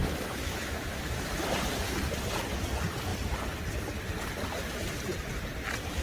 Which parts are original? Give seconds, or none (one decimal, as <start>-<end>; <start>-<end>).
1.3-6.0